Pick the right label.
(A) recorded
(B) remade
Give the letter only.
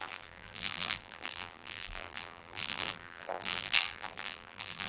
B